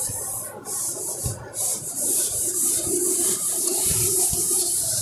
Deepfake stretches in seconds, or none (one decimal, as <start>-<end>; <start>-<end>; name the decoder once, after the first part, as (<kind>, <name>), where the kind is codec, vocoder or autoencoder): 1.7-5.0 (vocoder, BigVGAN v2)